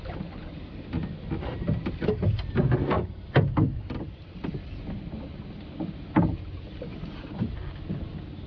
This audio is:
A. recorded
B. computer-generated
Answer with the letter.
A